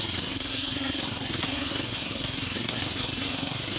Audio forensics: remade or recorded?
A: remade